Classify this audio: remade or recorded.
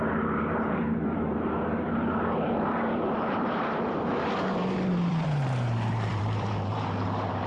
remade